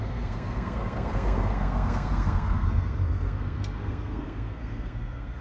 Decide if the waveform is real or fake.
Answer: fake